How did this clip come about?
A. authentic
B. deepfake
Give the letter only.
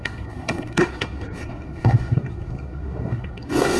B